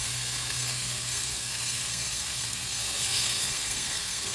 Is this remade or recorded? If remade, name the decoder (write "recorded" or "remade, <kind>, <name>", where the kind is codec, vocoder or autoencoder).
remade, codec, SNAC